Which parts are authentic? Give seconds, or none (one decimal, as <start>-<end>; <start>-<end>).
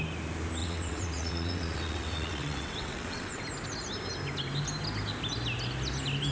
0.0-0.6; 3.4-6.3